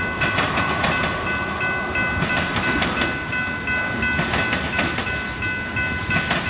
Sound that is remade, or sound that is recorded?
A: recorded